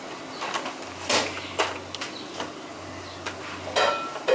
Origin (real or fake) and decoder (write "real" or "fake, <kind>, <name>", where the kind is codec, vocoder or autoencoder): real